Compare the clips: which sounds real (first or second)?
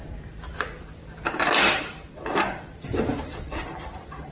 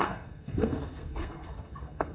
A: first